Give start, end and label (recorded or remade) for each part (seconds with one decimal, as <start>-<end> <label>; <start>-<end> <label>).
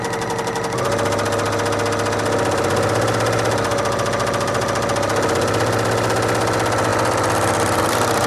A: 0.0-8.3 recorded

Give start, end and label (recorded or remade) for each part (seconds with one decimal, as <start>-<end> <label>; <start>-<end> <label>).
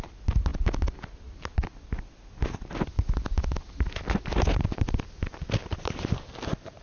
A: 0.0-5.6 recorded; 5.6-6.8 remade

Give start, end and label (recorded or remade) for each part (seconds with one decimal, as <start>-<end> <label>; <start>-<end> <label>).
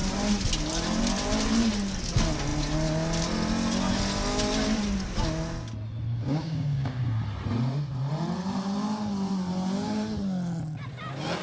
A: 0.0-6.2 recorded; 6.2-7.0 remade; 7.0-11.4 recorded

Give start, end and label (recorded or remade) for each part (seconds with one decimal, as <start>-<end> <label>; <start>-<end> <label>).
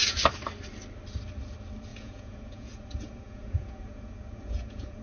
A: 0.0-1.9 recorded; 1.9-5.0 remade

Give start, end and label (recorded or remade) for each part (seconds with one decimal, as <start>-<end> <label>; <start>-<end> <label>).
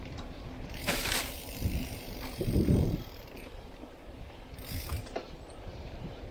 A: 0.0-6.3 remade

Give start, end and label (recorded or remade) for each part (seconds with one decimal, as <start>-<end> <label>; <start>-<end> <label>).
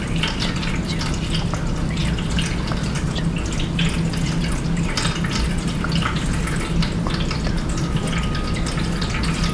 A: 0.0-9.5 recorded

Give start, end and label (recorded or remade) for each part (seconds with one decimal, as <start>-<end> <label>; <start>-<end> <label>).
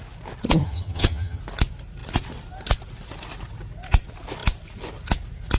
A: 0.0-0.6 recorded; 0.6-1.4 remade; 1.4-5.6 recorded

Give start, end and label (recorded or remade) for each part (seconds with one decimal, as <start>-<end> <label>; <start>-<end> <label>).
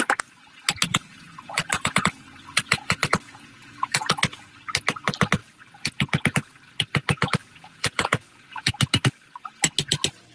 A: 0.0-0.9 recorded; 0.9-4.5 remade; 4.5-7.4 recorded; 7.4-8.7 remade; 8.7-10.3 recorded